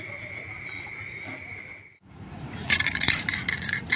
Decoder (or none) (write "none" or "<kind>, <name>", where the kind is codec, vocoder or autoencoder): vocoder, Vocos